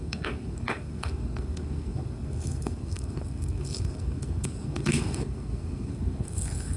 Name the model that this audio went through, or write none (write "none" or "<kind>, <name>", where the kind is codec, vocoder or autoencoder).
codec, SNAC